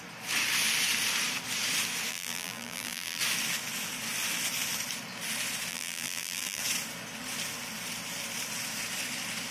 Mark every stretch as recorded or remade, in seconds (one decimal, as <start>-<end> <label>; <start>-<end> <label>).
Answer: 0.0-2.1 recorded; 2.1-3.2 remade; 3.2-5.7 recorded; 5.7-6.6 remade; 6.6-9.5 recorded